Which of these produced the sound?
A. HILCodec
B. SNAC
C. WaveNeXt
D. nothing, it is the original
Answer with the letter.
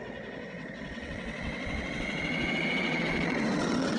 C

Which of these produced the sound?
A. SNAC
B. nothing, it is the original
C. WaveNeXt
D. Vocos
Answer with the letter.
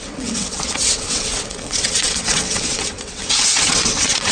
C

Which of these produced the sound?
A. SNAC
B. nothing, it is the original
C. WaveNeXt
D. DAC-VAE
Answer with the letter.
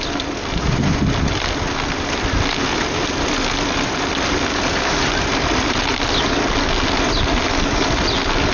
B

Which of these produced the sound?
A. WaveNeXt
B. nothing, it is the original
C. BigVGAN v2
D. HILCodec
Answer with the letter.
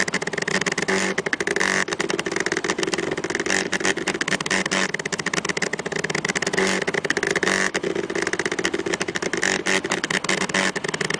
B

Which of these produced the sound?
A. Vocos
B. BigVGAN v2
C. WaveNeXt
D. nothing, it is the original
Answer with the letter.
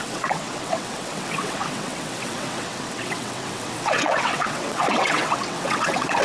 C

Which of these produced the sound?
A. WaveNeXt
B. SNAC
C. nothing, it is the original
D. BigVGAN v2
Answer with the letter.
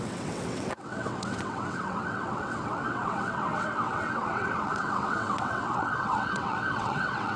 A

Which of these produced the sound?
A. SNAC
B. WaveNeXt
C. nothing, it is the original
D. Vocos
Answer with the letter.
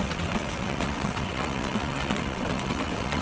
B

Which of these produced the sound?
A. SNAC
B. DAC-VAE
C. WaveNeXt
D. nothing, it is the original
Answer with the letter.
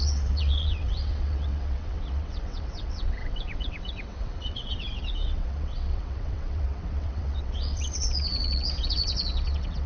C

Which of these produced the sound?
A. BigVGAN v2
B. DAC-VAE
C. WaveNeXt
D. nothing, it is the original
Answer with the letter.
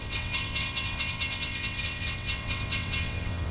C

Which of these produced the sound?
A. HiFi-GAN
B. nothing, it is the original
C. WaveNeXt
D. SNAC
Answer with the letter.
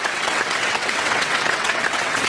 C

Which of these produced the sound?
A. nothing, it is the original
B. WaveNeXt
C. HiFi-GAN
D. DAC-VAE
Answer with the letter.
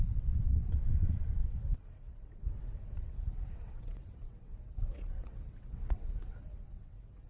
B